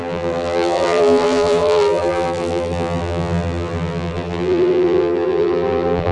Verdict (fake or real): fake